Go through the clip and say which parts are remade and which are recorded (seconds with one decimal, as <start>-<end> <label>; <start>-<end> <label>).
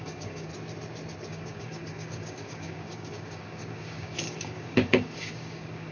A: 0.0-0.5 remade; 0.5-1.3 recorded; 1.3-5.9 remade